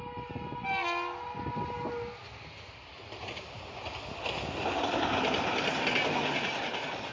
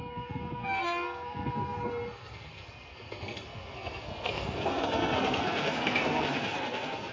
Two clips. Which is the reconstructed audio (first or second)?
second